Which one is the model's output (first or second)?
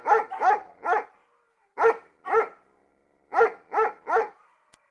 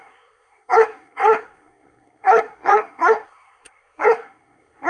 second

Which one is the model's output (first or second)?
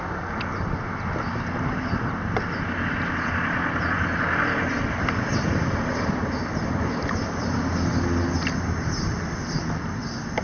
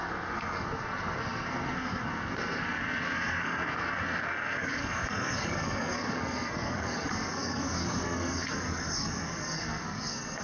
second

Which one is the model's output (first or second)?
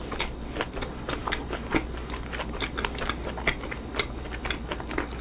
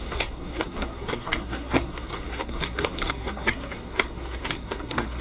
second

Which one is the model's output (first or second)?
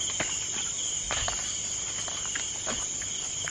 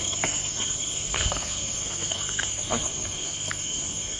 second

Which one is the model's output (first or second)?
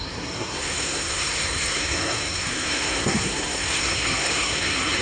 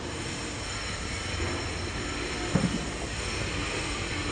first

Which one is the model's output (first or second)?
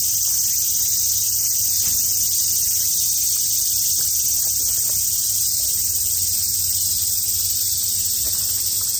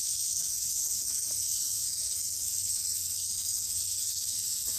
second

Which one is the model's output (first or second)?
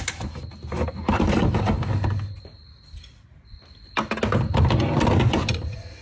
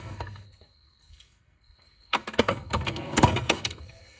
second